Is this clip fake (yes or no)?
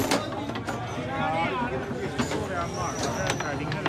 no